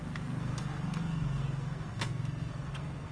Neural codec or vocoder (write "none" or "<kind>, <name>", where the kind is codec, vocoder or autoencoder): codec, SNAC